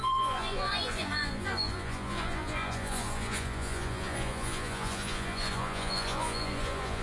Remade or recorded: remade